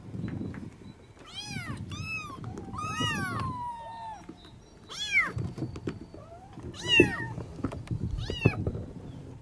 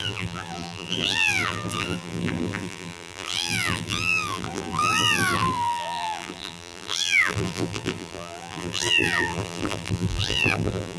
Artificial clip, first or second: second